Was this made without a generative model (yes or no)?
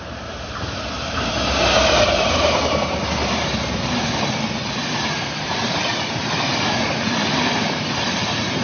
no